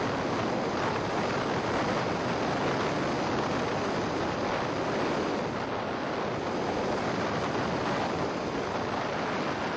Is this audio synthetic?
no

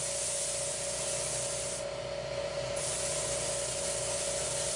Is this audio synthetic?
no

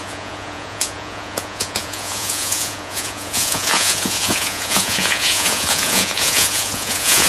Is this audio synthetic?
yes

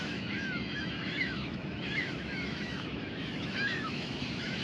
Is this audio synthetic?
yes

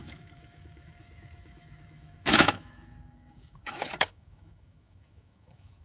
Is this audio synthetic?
yes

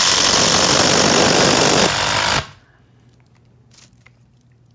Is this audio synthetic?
no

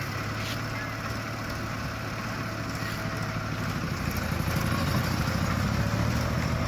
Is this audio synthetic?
no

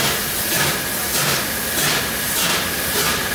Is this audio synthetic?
no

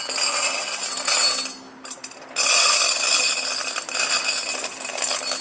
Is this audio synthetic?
no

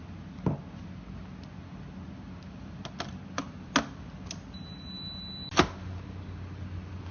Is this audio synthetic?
no